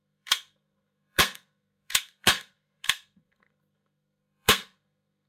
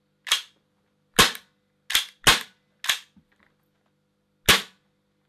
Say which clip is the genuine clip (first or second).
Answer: second